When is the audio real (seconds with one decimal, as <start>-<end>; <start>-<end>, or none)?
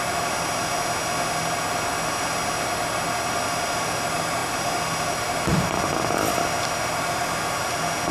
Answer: 0.0-8.1